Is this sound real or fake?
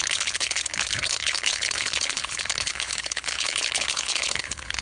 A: fake